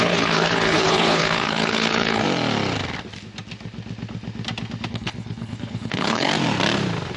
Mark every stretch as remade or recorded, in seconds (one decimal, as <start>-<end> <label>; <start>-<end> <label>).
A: 0.0-2.2 remade; 2.2-4.9 recorded; 4.9-6.3 remade; 6.3-7.2 recorded